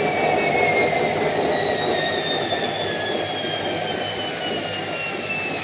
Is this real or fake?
real